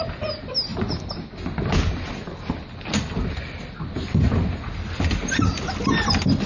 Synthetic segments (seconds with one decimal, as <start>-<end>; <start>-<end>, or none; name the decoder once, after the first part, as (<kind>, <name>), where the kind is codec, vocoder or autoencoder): none